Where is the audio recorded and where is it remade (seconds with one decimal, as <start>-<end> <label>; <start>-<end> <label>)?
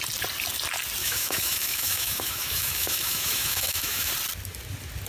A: 0.0-1.0 recorded; 1.0-4.1 remade; 4.1-5.1 recorded